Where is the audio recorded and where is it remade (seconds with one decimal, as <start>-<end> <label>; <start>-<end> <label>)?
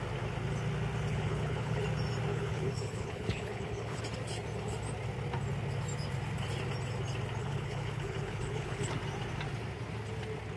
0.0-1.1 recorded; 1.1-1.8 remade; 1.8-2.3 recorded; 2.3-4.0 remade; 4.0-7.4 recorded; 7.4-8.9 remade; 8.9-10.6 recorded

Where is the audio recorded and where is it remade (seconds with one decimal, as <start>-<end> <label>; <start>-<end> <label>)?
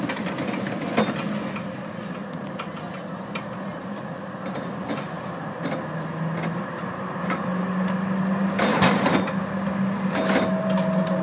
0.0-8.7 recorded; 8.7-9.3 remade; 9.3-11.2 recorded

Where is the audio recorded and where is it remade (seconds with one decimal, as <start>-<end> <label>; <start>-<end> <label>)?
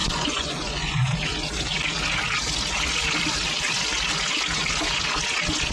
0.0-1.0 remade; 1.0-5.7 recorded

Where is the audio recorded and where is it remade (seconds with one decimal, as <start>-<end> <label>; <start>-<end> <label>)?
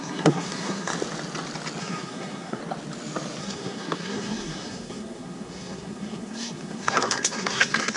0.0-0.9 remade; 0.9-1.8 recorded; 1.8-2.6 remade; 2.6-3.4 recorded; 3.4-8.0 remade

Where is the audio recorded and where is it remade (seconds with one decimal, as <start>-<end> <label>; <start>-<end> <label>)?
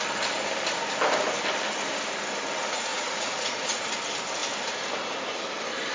0.0-2.9 recorded; 2.9-3.9 remade; 3.9-5.9 recorded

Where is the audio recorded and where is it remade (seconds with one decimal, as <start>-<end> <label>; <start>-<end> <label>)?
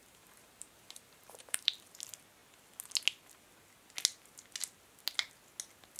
0.0-2.0 remade; 2.0-6.0 recorded